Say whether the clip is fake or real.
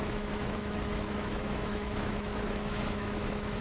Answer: fake